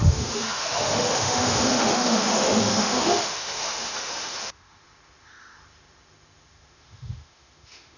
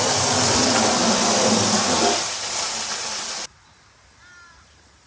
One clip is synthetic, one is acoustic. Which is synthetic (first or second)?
first